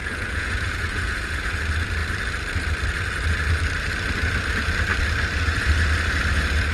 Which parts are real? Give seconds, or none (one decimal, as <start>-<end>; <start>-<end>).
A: 1.6-6.7